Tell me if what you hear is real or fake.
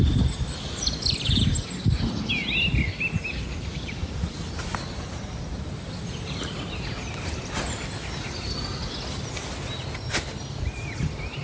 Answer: real